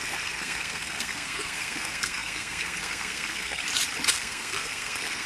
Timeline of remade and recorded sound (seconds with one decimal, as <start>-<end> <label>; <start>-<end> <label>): 0.0-3.6 remade; 3.6-4.1 recorded; 4.1-5.3 remade